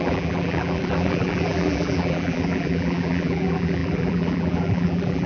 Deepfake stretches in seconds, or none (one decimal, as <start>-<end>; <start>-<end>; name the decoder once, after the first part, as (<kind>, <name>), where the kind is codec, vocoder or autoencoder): 0.0-5.3 (vocoder, BigVGAN v2)